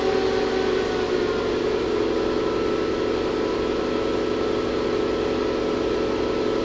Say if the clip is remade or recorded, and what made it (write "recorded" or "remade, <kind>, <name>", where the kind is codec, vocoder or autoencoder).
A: recorded